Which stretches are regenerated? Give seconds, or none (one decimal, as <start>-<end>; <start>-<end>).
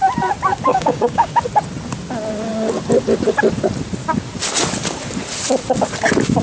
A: 0.7-1.3